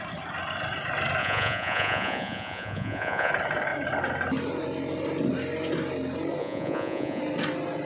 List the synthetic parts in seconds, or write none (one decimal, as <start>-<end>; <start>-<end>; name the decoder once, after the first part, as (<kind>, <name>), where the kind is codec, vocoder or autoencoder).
1.2-3.3 (vocoder, Vocos); 6.4-7.2